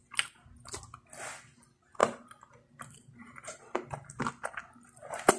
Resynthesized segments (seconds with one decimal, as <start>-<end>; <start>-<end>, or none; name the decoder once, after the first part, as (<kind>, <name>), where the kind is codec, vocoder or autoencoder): 0.0-0.8 (vocoder, BigVGAN v2); 2.0-5.4